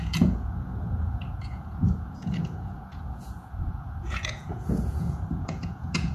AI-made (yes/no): yes